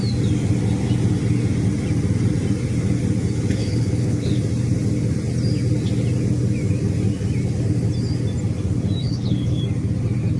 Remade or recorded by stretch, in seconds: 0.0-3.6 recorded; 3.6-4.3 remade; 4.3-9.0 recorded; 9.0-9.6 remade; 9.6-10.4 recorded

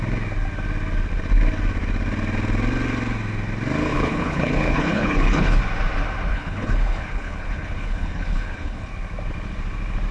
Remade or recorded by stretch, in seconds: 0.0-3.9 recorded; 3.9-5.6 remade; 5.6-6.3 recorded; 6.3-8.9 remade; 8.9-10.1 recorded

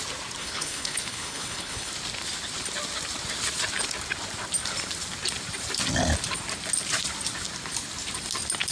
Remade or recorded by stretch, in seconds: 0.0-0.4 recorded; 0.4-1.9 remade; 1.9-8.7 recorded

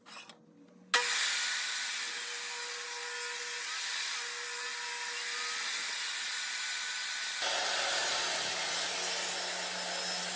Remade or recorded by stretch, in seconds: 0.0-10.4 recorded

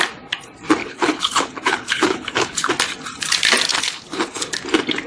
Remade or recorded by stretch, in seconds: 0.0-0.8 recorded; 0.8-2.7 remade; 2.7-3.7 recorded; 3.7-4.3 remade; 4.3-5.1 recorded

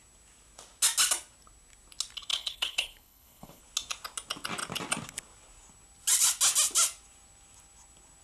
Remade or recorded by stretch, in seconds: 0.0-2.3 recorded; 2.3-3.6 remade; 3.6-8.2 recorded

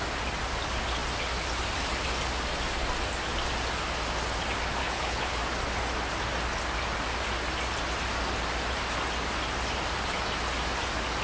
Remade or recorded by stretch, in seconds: 0.0-4.8 recorded; 4.8-5.4 remade; 5.4-11.2 recorded

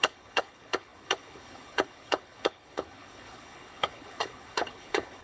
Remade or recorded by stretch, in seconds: 0.0-5.2 remade